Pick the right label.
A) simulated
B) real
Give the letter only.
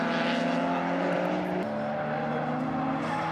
B